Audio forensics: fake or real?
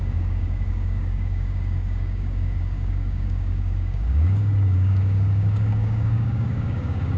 fake